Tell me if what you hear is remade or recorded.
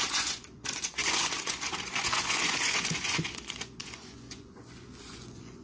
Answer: remade